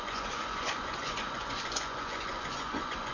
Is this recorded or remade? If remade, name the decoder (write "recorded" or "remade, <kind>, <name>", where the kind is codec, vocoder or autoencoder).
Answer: remade, vocoder, Vocos